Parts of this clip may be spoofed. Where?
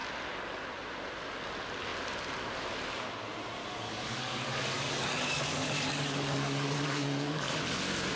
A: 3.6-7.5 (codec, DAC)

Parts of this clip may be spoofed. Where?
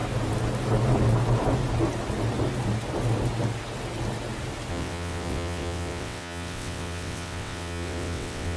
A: 4.7-8.6 (vocoder, WaveNeXt)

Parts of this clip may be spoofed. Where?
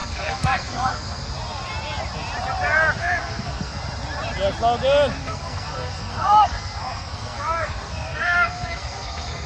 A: 0.0-1.3 (codec, SNAC); 3.0-3.8; 5.2-9.5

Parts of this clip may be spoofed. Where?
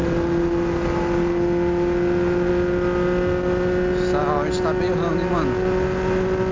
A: none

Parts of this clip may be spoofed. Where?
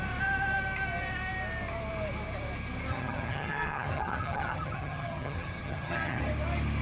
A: 2.9-6.2 (vocoder, HiFi-GAN)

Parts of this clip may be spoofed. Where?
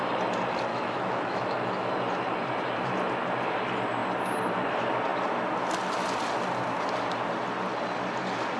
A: 0.7-1.9 (autoencoder, DAC-VAE)